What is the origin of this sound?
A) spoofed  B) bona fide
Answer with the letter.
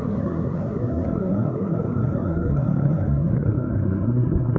A